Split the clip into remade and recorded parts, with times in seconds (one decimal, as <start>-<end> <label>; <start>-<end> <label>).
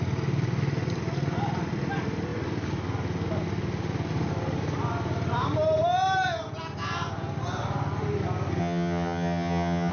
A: 0.0-8.6 recorded; 8.6-9.9 remade